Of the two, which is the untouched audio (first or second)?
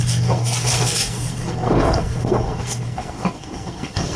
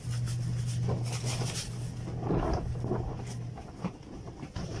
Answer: second